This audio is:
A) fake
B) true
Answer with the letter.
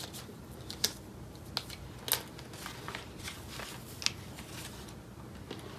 B